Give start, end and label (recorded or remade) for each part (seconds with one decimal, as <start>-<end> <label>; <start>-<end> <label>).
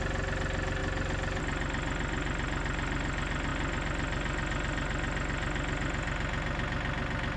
0.0-7.4 recorded